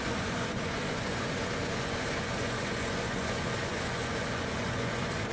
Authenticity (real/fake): fake